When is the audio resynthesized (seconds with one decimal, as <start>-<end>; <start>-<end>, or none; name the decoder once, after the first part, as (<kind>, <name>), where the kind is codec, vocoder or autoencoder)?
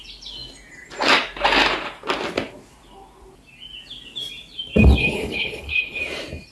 5.0-6.0 (codec, HILCodec)